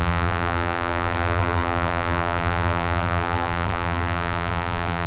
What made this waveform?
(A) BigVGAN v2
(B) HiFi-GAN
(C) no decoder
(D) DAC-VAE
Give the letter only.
A